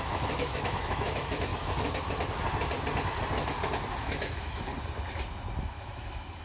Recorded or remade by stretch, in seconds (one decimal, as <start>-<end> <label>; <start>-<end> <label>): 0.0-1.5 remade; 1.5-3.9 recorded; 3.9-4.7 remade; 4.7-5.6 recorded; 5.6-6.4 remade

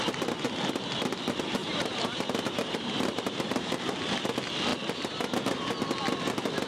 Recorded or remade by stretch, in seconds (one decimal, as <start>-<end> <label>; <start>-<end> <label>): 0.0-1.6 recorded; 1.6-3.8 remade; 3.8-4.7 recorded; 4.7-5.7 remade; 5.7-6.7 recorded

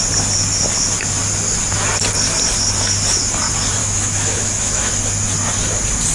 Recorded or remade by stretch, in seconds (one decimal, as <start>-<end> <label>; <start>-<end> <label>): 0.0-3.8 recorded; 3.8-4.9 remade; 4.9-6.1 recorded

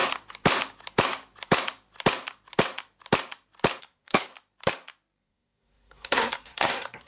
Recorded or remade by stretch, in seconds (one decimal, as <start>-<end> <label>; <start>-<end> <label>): 0.0-3.8 recorded; 3.8-4.3 remade; 4.3-5.2 recorded; 5.2-7.1 remade

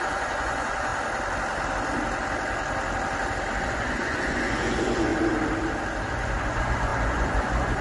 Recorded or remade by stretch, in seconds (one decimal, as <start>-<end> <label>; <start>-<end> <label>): 0.0-0.9 remade; 0.9-3.6 recorded; 3.6-5.1 remade; 5.1-6.1 recorded; 6.1-7.8 remade